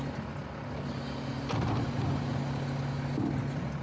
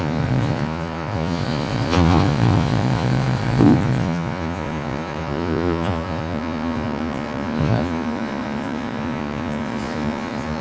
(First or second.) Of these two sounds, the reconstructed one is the second